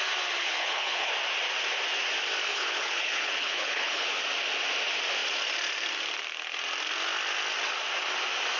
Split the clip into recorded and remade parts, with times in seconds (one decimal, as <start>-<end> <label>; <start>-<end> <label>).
0.0-0.4 recorded; 0.4-1.1 remade; 1.1-2.5 recorded; 2.5-4.2 remade; 4.2-8.6 recorded